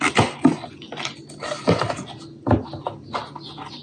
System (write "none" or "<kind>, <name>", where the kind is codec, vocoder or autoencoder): none